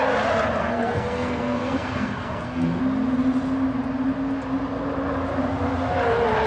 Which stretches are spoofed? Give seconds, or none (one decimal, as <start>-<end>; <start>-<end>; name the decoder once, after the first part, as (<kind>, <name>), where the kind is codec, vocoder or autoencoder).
0.6-2.8 (codec, SNAC)